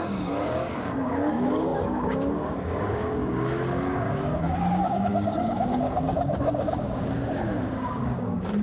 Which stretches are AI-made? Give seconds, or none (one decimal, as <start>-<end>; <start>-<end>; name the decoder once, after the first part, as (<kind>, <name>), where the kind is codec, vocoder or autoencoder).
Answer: 0.0-8.6 (codec, DAC)